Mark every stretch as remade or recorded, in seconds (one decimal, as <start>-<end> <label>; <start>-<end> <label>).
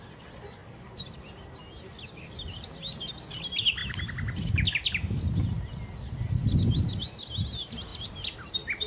0.0-0.6 recorded; 0.6-1.3 remade; 1.3-7.9 recorded; 7.9-8.9 remade